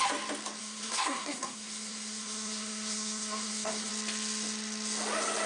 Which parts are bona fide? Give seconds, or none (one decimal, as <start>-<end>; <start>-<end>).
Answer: 0.0-0.6; 3.9-5.5

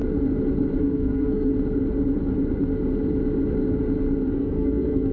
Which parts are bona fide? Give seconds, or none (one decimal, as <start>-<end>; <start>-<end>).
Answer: 0.0-0.8; 1.5-4.3

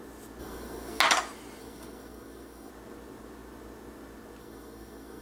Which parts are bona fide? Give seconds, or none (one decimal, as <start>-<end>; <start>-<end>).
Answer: 0.0-0.4; 1.0-1.6; 2.7-4.4